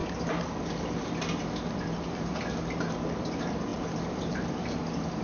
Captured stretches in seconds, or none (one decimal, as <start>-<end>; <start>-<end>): 0.0-3.7; 4.8-5.2

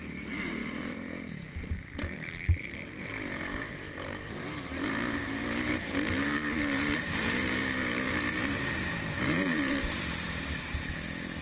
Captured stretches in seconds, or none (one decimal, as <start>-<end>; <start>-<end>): none

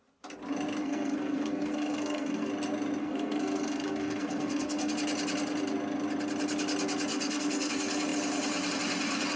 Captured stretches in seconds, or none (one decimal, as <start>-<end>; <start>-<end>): 0.0-0.8; 2.5-3.0; 4.9-7.1; 7.7-9.4

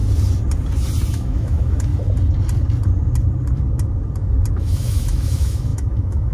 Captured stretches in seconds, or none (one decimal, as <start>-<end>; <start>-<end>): 0.0-1.1; 1.9-4.5